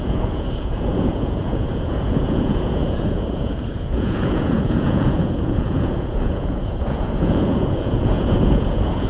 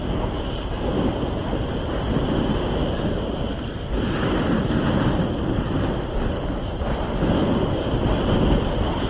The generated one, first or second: first